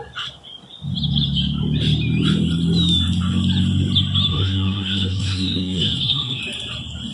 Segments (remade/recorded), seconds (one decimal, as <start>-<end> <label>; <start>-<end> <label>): 0.0-4.3 recorded; 4.3-6.4 remade; 6.4-7.1 recorded